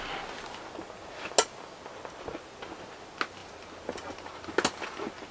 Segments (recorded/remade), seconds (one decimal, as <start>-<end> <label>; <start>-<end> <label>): 0.0-5.3 recorded